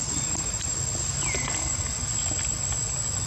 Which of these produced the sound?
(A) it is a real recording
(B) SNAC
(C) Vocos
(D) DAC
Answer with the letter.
A